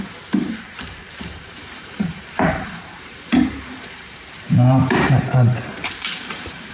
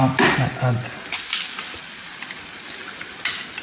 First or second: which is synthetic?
first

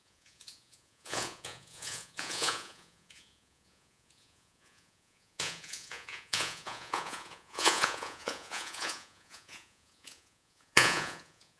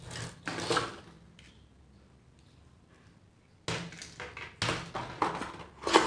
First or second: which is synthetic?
first